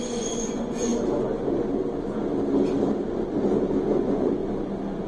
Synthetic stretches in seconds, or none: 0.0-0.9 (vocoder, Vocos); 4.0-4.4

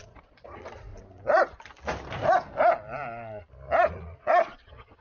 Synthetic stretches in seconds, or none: 0.0-0.9 (vocoder, Vocos); 3.9-5.0